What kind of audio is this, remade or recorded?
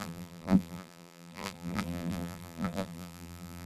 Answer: remade